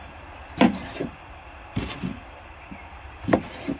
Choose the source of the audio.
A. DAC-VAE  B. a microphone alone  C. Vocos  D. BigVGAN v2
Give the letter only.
D